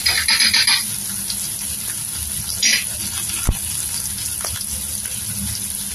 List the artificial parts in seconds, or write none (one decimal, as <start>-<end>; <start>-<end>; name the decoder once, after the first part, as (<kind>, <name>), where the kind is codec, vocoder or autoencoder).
none

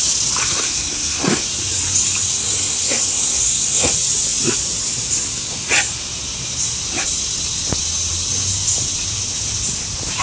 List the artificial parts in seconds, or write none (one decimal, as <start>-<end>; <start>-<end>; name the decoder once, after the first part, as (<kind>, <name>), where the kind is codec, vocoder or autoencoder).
0.4-1.4 (codec, SNAC); 2.2-3.9

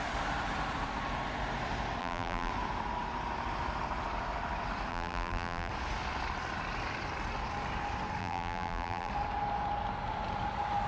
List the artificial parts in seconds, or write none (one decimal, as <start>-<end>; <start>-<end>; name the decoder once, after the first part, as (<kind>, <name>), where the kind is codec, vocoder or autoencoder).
2.0-2.5 (vocoder, BigVGAN v2); 4.9-5.7; 8.2-9.1